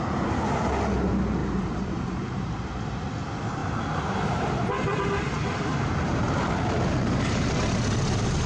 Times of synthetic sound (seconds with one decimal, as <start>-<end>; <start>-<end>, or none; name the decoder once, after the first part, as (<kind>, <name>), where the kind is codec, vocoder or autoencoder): 1.4-2.5 (vocoder, BigVGAN v2); 3.6-4.4; 5.7-6.4